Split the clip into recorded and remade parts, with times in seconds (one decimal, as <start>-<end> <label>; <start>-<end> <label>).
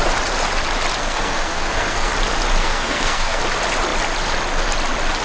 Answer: 0.0-1.0 recorded; 1.0-2.1 remade; 2.1-2.6 recorded; 2.6-3.4 remade; 3.4-5.2 recorded